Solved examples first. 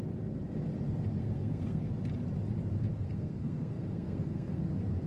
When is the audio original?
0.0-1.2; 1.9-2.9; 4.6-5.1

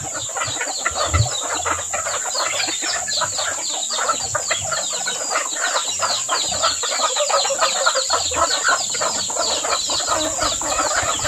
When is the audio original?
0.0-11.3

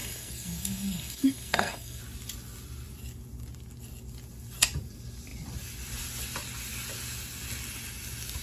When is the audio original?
2.0-8.4

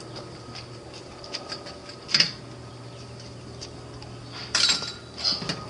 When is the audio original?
0.0-5.7

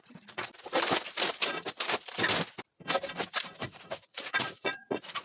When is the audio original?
0.5-3.6

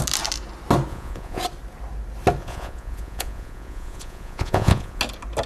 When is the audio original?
0.0-0.9; 1.4-2.4; 5.0-5.5

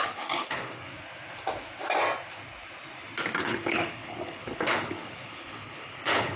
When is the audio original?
0.9-3.4